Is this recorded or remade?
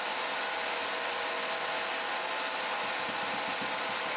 recorded